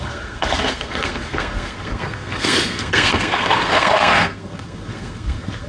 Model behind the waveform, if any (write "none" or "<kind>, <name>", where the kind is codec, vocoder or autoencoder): codec, SNAC